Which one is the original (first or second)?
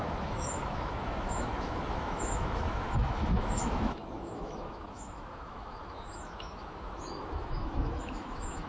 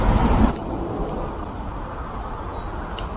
second